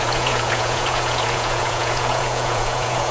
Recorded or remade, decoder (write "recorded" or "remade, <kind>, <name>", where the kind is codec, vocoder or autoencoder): remade, vocoder, Vocos